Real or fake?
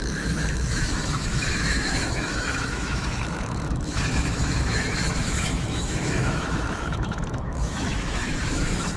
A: fake